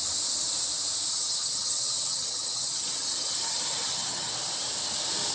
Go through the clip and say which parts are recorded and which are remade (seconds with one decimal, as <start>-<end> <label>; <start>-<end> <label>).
0.0-1.1 recorded; 1.1-4.3 remade; 4.3-5.3 recorded